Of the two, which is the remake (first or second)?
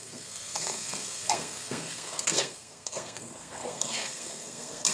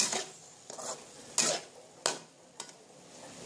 first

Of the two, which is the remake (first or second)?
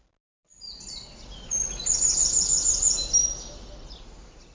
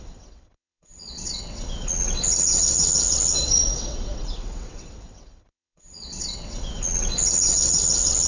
second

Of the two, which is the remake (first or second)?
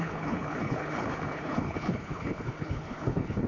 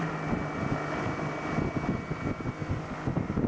first